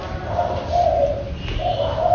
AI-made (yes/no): no